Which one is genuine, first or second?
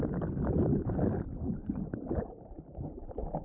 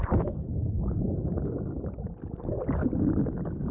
second